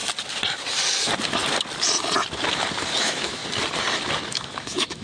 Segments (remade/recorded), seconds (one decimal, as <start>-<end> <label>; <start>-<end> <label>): 0.0-3.0 recorded; 3.0-3.4 remade; 3.4-4.3 recorded; 4.3-5.0 remade